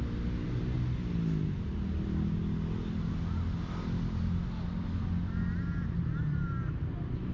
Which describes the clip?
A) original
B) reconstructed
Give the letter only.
A